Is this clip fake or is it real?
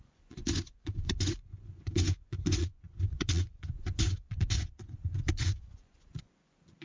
fake